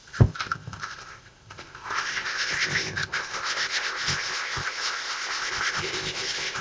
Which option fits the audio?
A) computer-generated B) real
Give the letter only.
A